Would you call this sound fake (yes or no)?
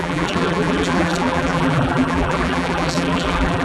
yes